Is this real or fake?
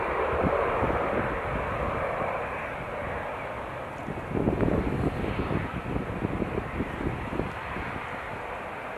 real